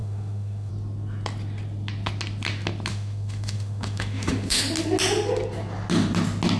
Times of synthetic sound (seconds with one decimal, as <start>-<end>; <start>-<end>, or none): 0.0-0.7; 2.9-4.6